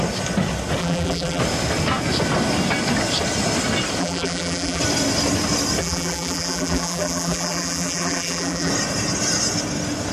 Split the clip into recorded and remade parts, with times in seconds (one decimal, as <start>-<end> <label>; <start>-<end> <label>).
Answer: 0.0-0.8 recorded; 0.8-1.4 remade; 1.4-4.0 recorded; 4.0-4.8 remade; 4.8-5.8 recorded; 5.8-8.7 remade; 8.7-10.1 recorded